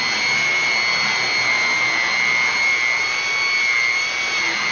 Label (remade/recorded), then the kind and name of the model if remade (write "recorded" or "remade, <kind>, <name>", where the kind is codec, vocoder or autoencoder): recorded